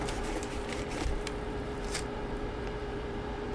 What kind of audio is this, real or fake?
fake